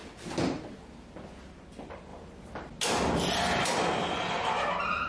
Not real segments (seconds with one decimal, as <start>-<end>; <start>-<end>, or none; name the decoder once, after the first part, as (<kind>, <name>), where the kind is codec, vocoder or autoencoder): none